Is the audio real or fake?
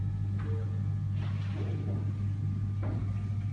real